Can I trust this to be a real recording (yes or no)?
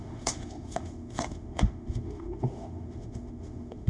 no